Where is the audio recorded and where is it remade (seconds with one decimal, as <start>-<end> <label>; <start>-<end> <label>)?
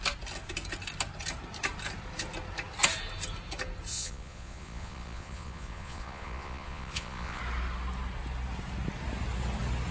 0.0-3.9 recorded; 3.9-7.4 remade; 7.4-9.9 recorded